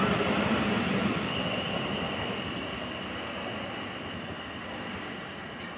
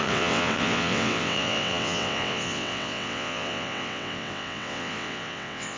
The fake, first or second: second